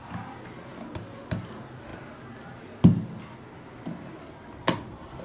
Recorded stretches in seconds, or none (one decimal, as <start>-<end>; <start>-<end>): 0.0-5.2